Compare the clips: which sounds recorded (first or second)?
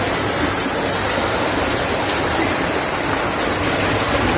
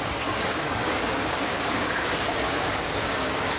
first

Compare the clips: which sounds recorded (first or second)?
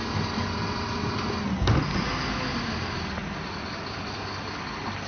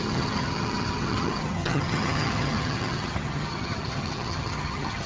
first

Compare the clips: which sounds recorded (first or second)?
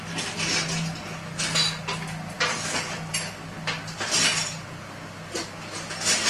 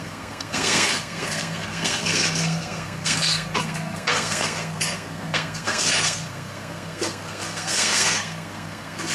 first